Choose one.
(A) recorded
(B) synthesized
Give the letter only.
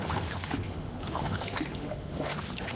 B